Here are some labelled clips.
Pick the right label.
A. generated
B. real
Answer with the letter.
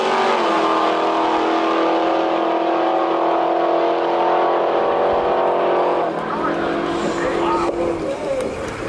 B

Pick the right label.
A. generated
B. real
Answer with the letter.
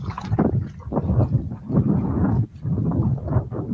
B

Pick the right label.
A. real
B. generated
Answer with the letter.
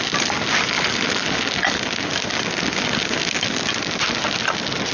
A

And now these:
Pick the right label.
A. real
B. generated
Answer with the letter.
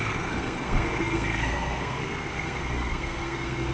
B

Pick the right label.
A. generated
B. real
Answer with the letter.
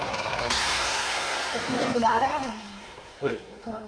A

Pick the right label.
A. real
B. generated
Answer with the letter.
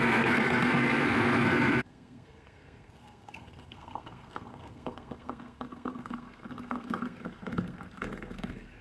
B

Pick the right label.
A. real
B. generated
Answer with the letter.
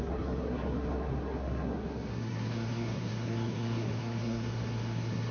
B